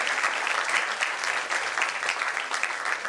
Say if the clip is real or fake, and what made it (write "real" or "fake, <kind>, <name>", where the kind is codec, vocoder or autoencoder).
real